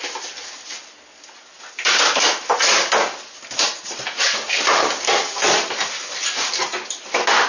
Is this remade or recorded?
recorded